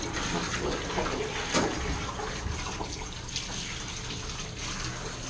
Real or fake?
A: real